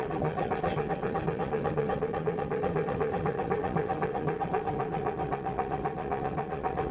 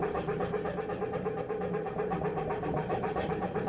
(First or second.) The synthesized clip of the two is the first